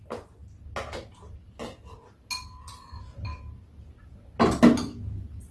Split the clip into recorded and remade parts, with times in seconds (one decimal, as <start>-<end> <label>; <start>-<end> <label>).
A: 0.0-5.5 recorded